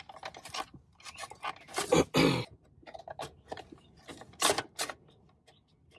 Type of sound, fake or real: real